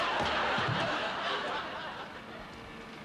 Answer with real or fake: real